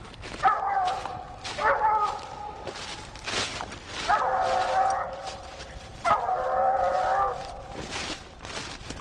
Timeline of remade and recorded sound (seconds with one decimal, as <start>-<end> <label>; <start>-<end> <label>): 0.0-5.2 recorded; 5.2-5.9 remade; 5.9-7.4 recorded; 7.4-8.5 remade; 8.5-9.0 recorded